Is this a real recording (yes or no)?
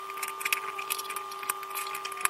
yes